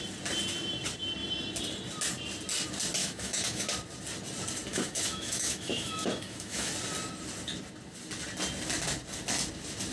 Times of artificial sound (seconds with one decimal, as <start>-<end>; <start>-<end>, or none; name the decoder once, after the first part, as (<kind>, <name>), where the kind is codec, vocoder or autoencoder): 3.0-3.7 (autoencoder, DAC-VAE); 4.7-6.7